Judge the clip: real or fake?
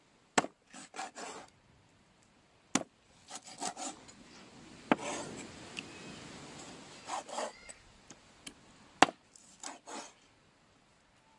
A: real